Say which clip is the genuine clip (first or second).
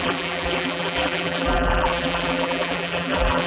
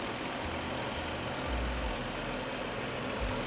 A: second